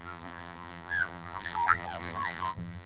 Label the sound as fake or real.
fake